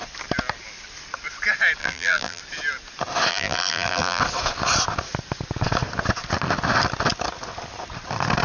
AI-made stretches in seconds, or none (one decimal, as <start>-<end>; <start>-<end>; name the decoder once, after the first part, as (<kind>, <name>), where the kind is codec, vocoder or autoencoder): 1.8-2.4 (vocoder, BigVGAN v2); 3.3-4.2